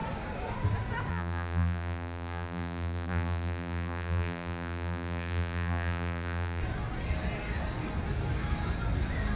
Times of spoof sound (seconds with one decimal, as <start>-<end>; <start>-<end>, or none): 1.1-6.6